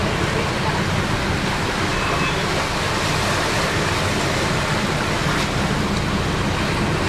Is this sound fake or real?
real